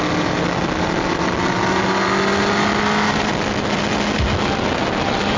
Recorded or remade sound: recorded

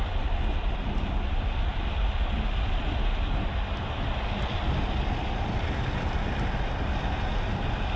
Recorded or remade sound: remade